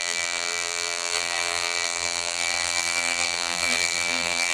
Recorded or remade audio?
remade